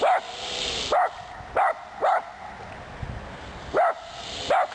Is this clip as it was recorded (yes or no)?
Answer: yes